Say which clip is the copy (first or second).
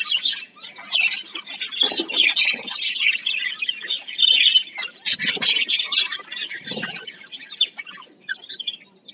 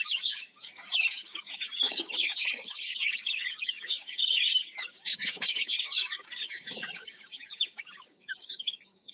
second